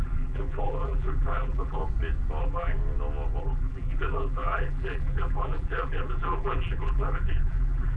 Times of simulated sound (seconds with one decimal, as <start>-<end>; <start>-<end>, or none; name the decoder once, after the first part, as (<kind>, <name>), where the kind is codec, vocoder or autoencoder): 0.0-1.8 (vocoder, BigVGAN v2); 2.4-2.8; 3.4-8.0